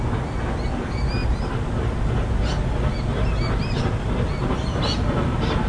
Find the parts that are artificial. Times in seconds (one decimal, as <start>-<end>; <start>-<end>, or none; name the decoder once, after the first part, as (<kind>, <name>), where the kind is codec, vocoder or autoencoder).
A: none